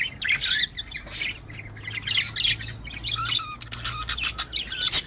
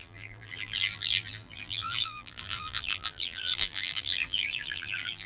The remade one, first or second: second